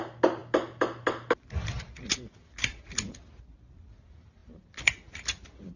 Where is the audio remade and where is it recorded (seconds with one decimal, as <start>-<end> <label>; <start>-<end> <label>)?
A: 0.0-5.8 recorded